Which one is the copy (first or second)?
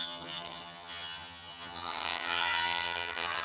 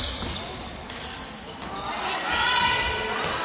first